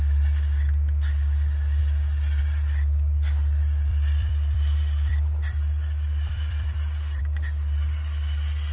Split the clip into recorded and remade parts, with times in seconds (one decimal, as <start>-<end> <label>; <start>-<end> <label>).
0.0-3.9 recorded; 3.9-7.2 remade; 7.2-8.7 recorded